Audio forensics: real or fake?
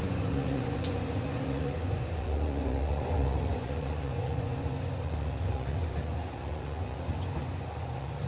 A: fake